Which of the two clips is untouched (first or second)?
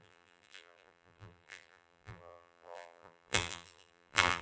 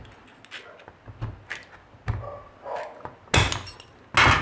second